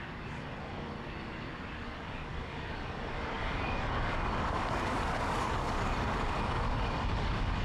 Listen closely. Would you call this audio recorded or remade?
remade